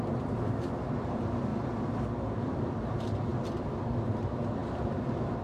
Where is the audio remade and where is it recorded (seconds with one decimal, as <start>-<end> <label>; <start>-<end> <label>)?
0.0-1.5 remade; 1.5-2.4 recorded; 2.4-3.3 remade; 3.3-4.1 recorded; 4.1-5.4 remade